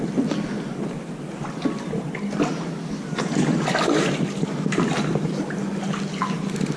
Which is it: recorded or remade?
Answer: recorded